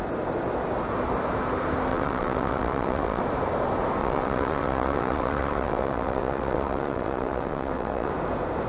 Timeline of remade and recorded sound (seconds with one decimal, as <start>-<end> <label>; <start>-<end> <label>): 0.0-1.9 recorded; 1.9-3.2 remade; 3.2-4.0 recorded; 4.0-8.1 remade; 8.1-8.7 recorded